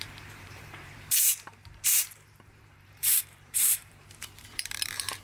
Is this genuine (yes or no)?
no